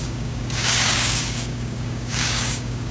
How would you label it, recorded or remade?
remade